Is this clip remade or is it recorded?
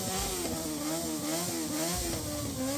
recorded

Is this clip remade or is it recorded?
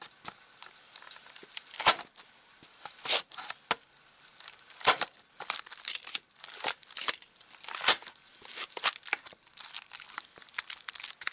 recorded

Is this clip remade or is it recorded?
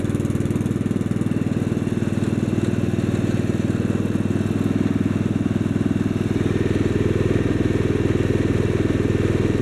recorded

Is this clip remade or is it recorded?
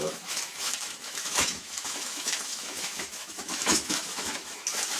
remade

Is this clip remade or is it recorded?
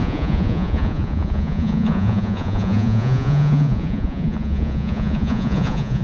remade